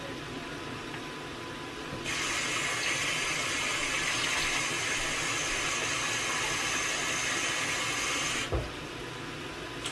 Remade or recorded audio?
recorded